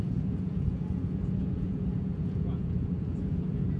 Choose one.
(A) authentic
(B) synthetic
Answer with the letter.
B